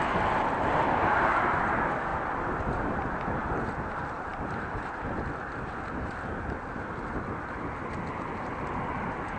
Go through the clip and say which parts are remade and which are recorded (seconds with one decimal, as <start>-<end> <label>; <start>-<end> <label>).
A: 0.0-9.4 recorded